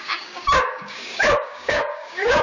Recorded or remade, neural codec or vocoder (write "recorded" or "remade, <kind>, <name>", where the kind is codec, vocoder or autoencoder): remade, codec, DAC